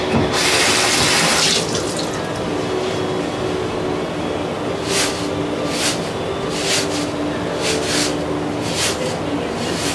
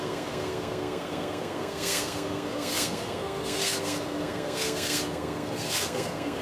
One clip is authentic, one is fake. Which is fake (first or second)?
second